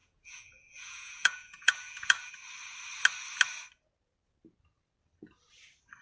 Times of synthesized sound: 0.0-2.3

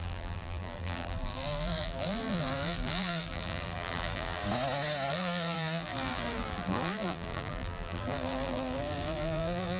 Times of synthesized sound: 0.0-4.4; 5.1-9.8

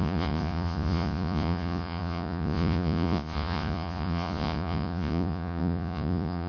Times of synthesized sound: 0.0-6.5